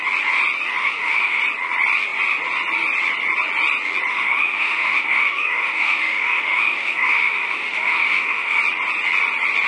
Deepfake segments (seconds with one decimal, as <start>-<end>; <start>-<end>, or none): 0.8-1.4; 4.1-8.6